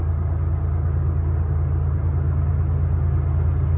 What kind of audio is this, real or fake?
real